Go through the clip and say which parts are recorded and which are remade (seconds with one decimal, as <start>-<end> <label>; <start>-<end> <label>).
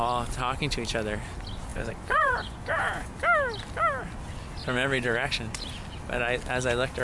0.0-1.7 recorded; 1.7-3.1 remade; 3.1-4.6 recorded; 4.6-5.3 remade; 5.3-7.0 recorded